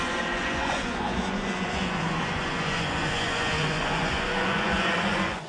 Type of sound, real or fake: fake